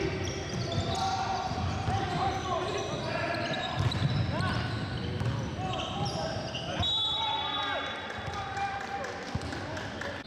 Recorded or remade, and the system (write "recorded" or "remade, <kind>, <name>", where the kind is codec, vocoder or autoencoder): recorded